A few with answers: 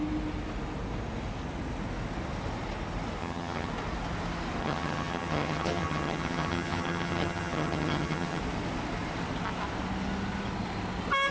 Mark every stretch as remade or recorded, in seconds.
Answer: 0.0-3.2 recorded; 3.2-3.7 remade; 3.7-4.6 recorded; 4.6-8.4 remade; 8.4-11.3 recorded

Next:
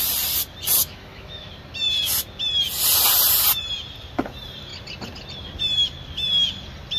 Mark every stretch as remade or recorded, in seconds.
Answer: 0.0-0.8 recorded; 0.8-1.5 remade; 1.5-7.0 recorded

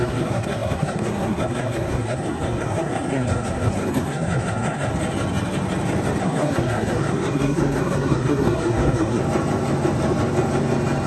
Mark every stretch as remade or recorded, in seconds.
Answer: 0.0-4.9 remade; 4.9-6.2 recorded; 6.2-9.2 remade; 9.2-11.1 recorded

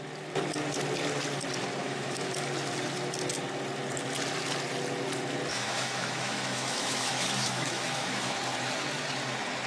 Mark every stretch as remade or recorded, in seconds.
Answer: 0.0-1.8 recorded; 1.8-2.3 remade; 2.3-5.5 recorded; 5.5-8.3 remade; 8.3-9.7 recorded

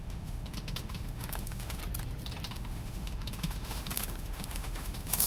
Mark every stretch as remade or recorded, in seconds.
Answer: 0.0-1.8 remade; 1.8-2.5 recorded; 2.5-5.3 remade